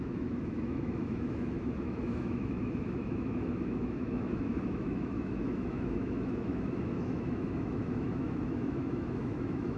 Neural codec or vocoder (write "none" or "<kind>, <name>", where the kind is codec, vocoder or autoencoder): autoencoder, DAC-VAE